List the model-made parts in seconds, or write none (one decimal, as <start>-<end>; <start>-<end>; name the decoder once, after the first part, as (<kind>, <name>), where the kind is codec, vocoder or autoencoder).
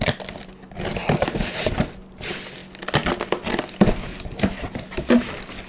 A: none